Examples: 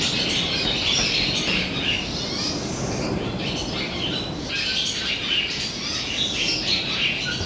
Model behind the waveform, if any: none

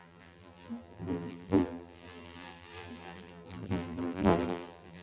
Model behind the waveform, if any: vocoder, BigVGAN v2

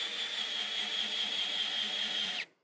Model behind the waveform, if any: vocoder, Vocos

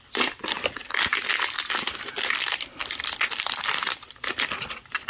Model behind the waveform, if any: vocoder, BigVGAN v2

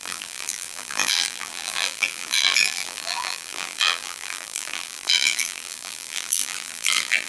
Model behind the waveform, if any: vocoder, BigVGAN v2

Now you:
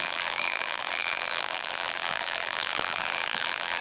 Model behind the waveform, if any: vocoder, BigVGAN v2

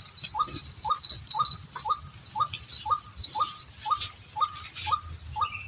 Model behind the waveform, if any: none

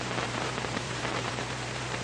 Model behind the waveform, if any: vocoder, BigVGAN v2